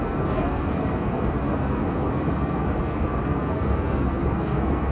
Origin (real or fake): fake